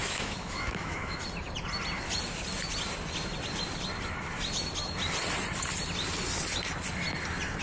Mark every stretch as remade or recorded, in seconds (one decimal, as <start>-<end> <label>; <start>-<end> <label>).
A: 0.0-1.2 remade; 1.2-7.6 recorded